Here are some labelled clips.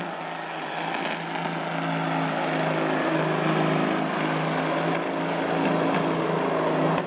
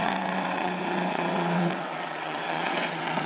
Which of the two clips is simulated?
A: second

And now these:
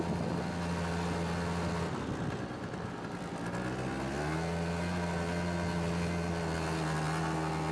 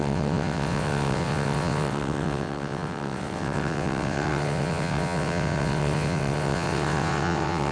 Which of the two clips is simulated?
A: second